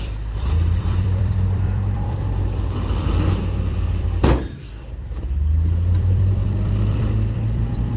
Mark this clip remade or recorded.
remade